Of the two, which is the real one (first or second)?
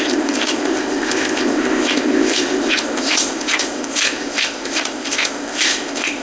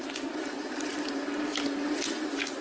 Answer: second